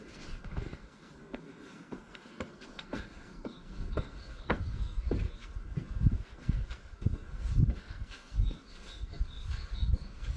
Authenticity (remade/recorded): remade